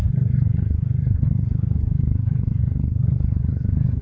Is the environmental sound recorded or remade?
remade